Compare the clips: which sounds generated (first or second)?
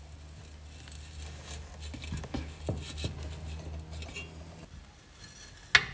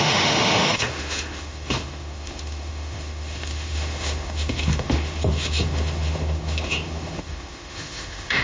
second